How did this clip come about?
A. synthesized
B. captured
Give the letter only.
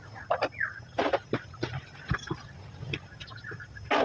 B